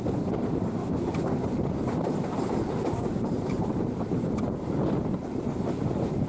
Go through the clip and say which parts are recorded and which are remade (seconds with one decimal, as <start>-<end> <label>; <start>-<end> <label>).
0.0-0.8 remade; 0.8-3.1 recorded; 3.1-6.3 remade